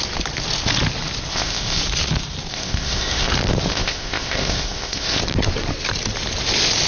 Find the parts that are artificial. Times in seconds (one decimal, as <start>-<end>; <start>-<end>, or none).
1.3-1.8; 2.5-3.3; 3.7-5.2